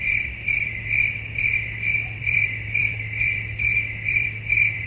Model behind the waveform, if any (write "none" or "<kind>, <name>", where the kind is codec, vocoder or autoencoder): vocoder, BigVGAN v2